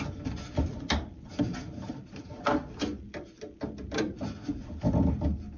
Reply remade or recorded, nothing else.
recorded